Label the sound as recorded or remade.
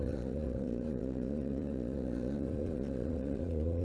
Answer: remade